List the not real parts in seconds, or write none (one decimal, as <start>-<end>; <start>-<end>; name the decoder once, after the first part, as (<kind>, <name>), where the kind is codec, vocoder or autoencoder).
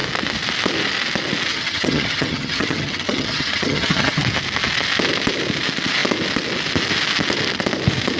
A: 1.5-4.2 (vocoder, HiFi-GAN)